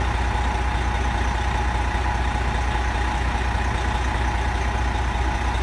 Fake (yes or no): no